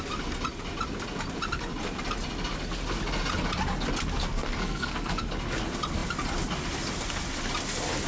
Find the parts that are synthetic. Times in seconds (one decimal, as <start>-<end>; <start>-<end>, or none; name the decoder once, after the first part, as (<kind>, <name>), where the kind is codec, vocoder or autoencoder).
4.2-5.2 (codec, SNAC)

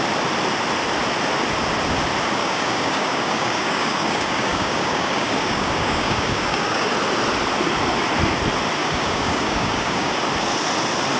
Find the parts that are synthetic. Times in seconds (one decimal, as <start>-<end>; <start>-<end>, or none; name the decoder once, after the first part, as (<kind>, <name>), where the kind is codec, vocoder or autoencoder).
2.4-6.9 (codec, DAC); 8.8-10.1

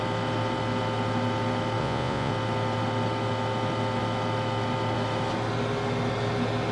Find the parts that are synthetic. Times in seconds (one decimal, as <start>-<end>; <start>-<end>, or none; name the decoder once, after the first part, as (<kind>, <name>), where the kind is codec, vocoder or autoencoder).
1.8-2.3 (vocoder, Vocos)